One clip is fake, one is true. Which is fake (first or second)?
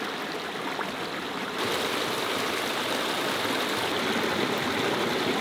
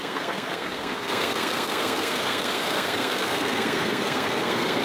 second